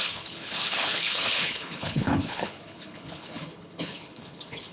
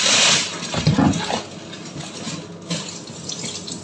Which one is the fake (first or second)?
first